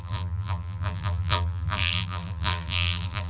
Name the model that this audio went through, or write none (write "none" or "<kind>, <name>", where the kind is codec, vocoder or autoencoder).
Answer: vocoder, BigVGAN v2